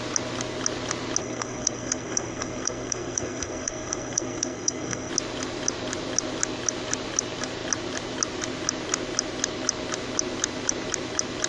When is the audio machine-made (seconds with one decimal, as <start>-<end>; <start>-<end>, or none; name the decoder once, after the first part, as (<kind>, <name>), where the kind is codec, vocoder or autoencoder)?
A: 1.2-5.1 (codec, SNAC)